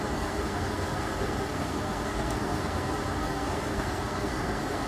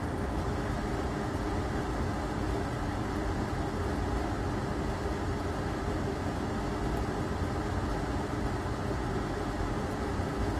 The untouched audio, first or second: second